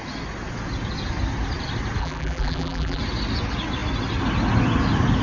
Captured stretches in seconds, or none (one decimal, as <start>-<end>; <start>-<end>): 0.0-2.0; 3.0-5.2